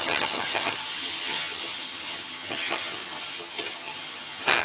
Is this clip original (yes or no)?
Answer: no